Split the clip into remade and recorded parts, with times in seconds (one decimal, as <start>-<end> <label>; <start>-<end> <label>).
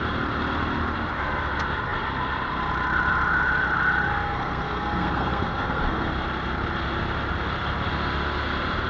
0.0-4.1 recorded; 4.1-6.1 remade; 6.1-8.9 recorded